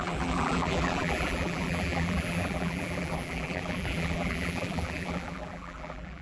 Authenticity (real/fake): fake